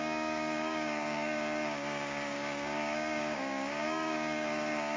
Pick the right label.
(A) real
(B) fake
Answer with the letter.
B